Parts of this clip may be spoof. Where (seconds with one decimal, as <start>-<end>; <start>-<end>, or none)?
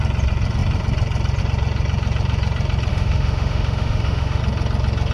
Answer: 2.9-4.4